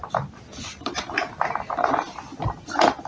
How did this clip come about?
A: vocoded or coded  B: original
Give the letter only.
B